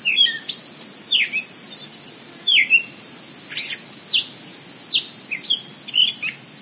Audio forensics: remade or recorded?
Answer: recorded